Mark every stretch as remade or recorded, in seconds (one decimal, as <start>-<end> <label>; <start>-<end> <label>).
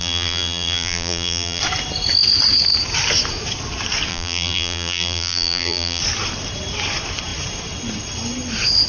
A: 0.0-1.6 remade; 1.6-4.1 recorded; 4.1-6.0 remade; 6.0-8.9 recorded